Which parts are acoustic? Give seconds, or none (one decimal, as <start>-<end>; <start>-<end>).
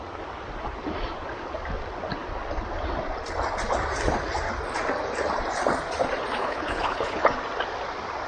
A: 0.0-6.4; 7.2-8.3